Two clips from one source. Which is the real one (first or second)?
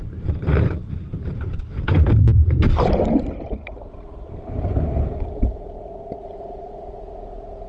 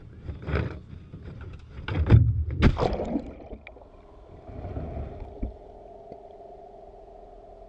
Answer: second